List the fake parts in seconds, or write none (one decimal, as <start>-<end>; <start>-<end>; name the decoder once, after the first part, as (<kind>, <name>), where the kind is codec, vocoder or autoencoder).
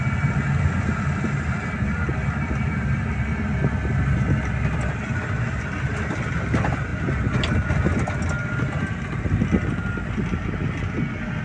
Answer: none